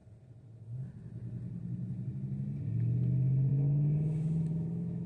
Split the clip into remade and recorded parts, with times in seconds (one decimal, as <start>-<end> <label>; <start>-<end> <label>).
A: 0.0-3.5 recorded; 3.5-5.1 remade